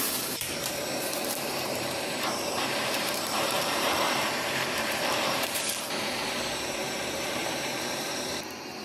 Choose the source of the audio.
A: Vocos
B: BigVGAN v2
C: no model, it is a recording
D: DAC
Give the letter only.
B